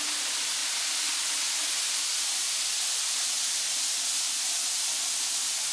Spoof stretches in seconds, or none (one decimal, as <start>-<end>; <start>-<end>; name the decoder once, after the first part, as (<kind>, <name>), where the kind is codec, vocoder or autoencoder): none